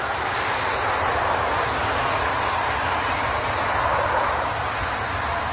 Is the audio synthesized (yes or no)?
no